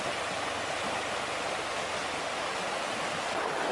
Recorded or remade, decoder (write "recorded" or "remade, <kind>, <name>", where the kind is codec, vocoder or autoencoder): recorded